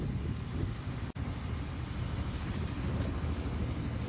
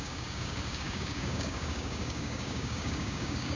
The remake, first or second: second